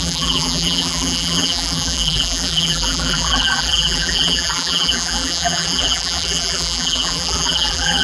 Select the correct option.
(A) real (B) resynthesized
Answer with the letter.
B